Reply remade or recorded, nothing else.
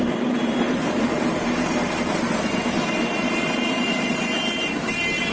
recorded